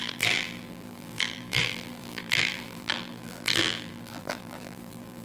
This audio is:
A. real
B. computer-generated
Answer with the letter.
B